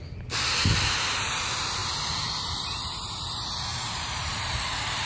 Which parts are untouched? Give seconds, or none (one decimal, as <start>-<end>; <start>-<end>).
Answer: 0.0-1.8; 3.1-3.7; 4.4-5.1